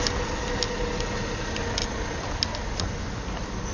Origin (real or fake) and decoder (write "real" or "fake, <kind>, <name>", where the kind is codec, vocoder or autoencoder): real